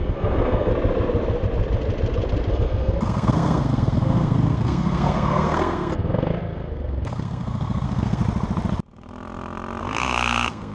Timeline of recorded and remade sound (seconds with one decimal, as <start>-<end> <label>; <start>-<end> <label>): 0.0-0.7 remade; 0.7-2.5 recorded; 2.5-8.2 remade; 8.2-9.8 recorded; 9.8-10.7 remade